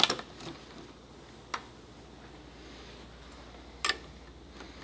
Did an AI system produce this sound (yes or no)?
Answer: no